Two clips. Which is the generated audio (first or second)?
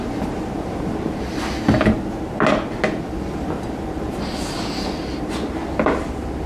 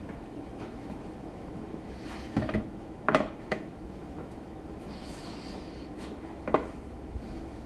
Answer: second